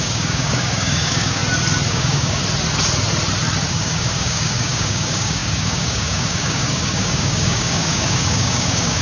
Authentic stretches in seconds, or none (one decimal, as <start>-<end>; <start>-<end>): 1.4-1.9; 2.4-3.7